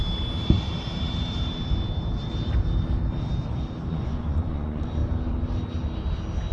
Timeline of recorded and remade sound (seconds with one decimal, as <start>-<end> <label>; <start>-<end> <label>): 0.0-3.9 recorded; 3.9-5.0 remade; 5.0-6.5 recorded